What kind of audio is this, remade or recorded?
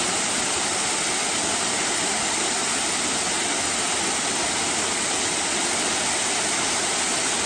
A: recorded